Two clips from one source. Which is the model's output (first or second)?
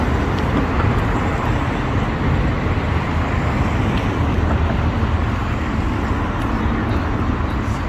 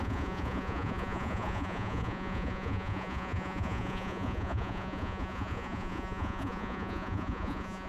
second